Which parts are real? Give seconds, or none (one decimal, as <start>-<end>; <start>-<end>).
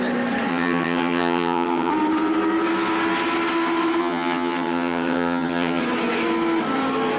0.0-0.5; 1.9-4.0; 5.8-7.2